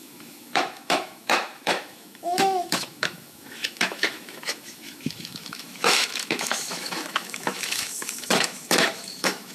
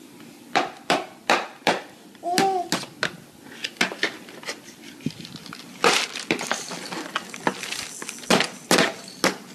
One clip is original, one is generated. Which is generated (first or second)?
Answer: first